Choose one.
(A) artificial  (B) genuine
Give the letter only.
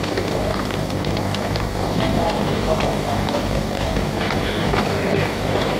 A